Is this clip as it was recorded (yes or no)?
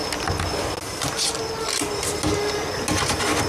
yes